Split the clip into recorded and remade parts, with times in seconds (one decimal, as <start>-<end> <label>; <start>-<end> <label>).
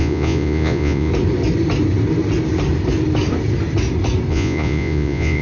0.0-1.1 remade; 1.1-4.3 recorded; 4.3-5.4 remade